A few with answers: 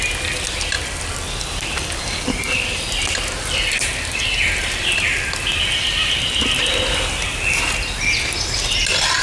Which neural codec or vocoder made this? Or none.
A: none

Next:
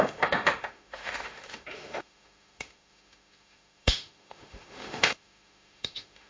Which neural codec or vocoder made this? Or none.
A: autoencoder, DAC-VAE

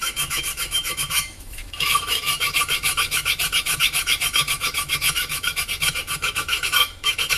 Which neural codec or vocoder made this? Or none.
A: autoencoder, DAC-VAE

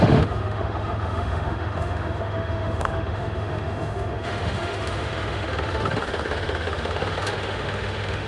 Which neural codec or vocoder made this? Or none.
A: autoencoder, DAC-VAE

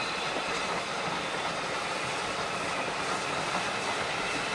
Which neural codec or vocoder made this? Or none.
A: none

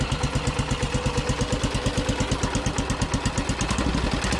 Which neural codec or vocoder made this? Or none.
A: none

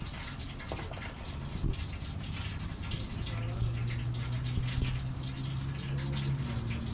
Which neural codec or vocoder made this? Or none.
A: none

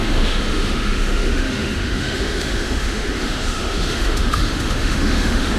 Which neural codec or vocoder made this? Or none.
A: autoencoder, DAC-VAE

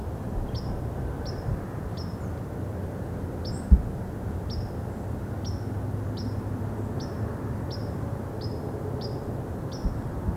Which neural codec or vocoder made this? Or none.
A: none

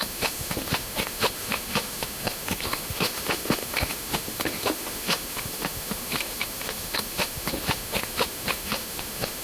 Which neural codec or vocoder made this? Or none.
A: autoencoder, DAC-VAE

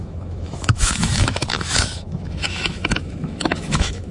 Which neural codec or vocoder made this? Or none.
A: autoencoder, DAC-VAE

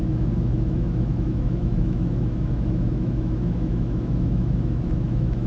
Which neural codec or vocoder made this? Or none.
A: autoencoder, DAC-VAE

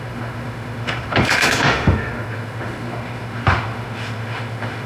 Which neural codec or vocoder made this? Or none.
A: autoencoder, DAC-VAE